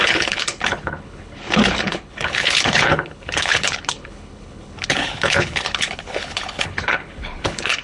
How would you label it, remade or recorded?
remade